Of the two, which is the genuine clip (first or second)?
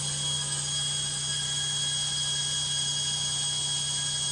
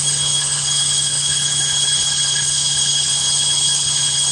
first